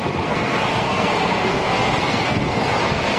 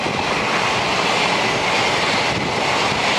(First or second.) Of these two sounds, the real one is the second